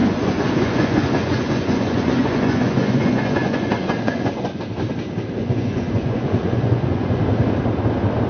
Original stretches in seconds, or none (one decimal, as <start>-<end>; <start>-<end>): 4.6-5.4; 7.2-8.3